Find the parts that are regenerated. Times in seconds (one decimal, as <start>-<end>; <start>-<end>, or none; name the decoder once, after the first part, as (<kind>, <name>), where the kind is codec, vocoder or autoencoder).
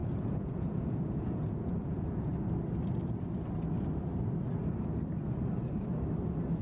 0.0-2.3 (vocoder, Vocos)